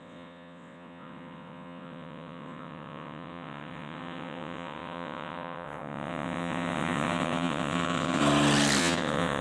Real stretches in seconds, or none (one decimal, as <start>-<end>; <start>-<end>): 8.2-8.8